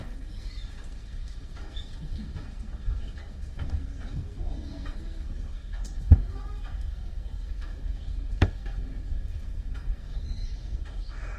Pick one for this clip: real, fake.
fake